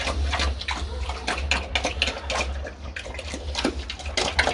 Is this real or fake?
real